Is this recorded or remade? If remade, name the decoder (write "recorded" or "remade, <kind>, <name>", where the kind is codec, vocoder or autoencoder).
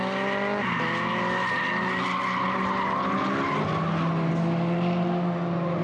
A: recorded